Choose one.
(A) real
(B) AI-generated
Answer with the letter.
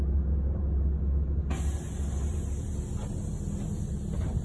A